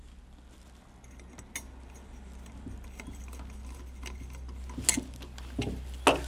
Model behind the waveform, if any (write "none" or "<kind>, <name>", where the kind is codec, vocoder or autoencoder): none